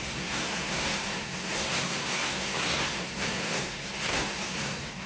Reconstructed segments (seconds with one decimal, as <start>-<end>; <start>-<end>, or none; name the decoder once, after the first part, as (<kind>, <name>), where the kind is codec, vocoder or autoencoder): 0.0-5.1 (codec, SNAC)